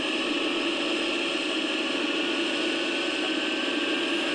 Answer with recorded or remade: recorded